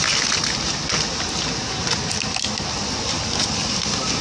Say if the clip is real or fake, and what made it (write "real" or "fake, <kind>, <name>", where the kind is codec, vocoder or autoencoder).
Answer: real